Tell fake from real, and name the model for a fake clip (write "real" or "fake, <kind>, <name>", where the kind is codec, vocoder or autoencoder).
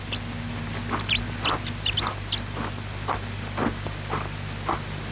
real